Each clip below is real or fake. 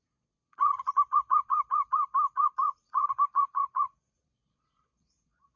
fake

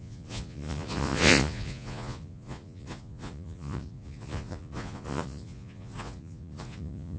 fake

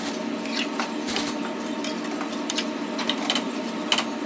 real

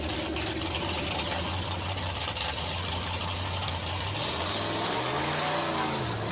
real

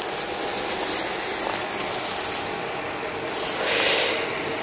real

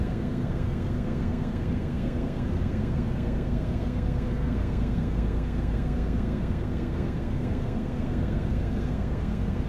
fake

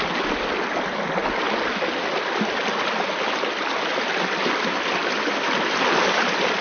real